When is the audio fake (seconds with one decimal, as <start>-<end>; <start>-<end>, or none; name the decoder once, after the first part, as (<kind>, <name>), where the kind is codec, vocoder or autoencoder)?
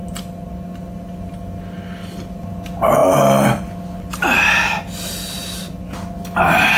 none